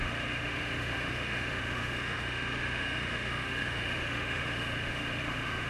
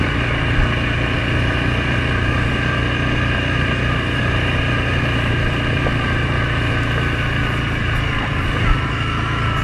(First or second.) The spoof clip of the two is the first